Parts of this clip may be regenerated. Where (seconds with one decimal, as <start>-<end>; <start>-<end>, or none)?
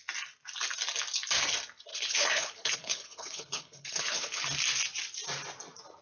1.9-4.4